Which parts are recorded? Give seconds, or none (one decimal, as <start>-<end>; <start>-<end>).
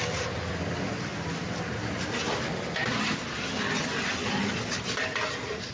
0.0-5.7